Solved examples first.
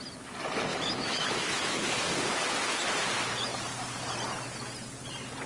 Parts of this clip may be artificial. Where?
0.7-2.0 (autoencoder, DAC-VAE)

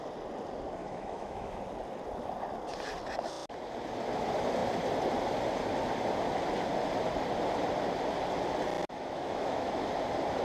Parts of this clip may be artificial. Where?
0.8-1.6 (autoencoder, DAC-VAE); 8.8-9.9

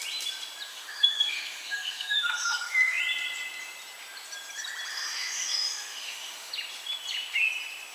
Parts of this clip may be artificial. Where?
0.7-3.0 (autoencoder, DAC-VAE); 4.9-6.5

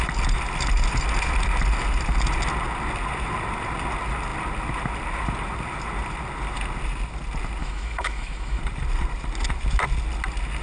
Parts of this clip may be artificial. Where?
7.6-8.6 (autoencoder, DAC-VAE)

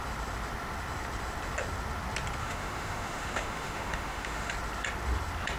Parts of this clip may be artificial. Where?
2.4-4.5 (autoencoder, DAC-VAE)

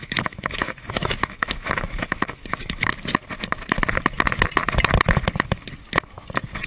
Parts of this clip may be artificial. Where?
0.0-2.9 (autoencoder, DAC-VAE)

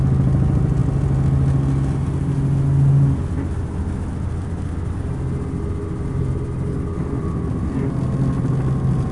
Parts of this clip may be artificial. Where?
none

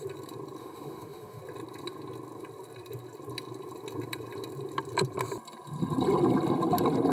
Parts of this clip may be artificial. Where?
0.6-1.4 (autoencoder, DAC-VAE)